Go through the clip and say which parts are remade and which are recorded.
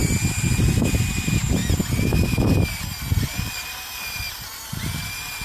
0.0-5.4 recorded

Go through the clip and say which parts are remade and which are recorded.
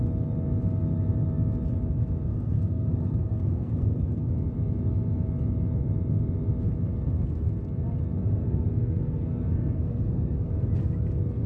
0.0-2.3 recorded; 2.3-4.3 remade; 4.3-8.2 recorded; 8.2-10.5 remade; 10.5-11.5 recorded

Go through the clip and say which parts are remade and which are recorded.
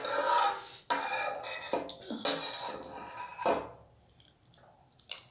0.0-5.3 recorded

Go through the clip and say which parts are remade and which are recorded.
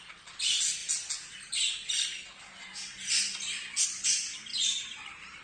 0.0-4.5 recorded; 4.5-5.4 remade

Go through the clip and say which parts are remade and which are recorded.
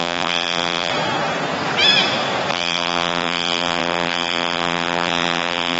0.0-0.9 remade; 0.9-2.5 recorded; 2.5-5.8 remade